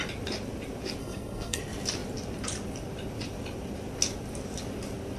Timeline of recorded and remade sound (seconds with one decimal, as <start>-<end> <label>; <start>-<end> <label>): 0.0-1.0 recorded; 1.0-1.6 remade; 1.6-5.2 recorded